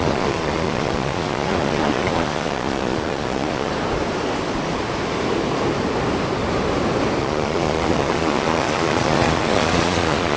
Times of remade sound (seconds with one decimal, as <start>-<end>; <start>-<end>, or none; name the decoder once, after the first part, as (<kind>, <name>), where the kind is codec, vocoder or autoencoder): 0.0-3.7 (vocoder, Vocos); 7.2-10.4